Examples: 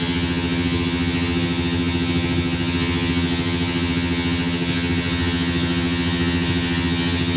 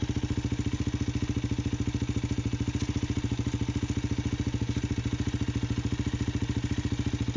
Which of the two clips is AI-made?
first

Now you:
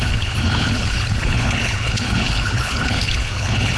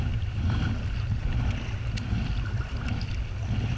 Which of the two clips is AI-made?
first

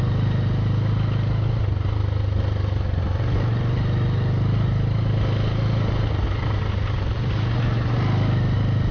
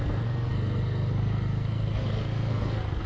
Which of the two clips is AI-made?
second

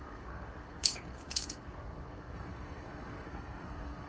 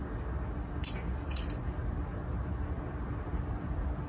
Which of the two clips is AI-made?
first